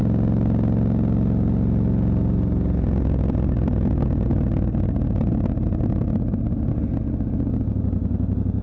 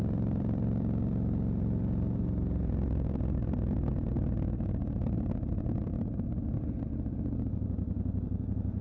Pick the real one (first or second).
first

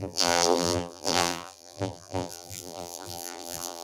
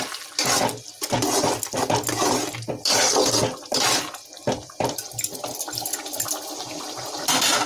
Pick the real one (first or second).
second